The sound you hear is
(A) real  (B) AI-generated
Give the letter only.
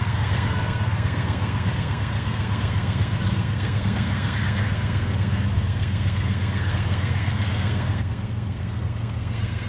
B